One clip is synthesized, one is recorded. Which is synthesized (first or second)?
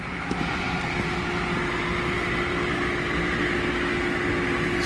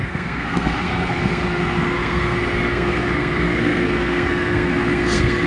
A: second